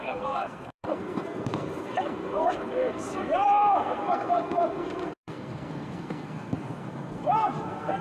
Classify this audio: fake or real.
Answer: fake